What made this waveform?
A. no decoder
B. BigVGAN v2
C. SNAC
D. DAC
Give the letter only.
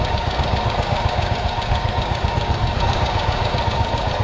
D